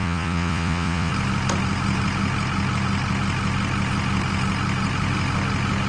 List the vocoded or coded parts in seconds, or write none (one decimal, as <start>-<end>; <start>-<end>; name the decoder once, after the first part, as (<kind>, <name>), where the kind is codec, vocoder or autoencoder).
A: 0.0-1.1 (vocoder, Vocos)